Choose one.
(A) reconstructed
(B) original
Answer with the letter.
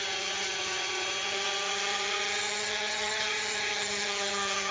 A